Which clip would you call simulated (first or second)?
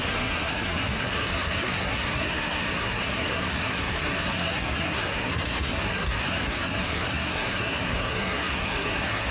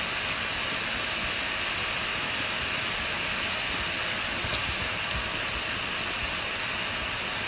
first